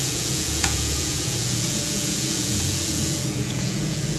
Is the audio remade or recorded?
remade